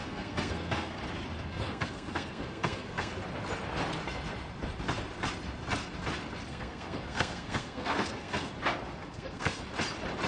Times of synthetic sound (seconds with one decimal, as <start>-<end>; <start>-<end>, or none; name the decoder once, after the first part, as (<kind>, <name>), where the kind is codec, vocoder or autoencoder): 0.0-1.0 (codec, SNAC); 1.5-3.1; 6.5-8.5; 9.0-9.6